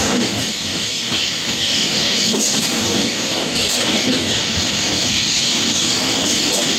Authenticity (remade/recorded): remade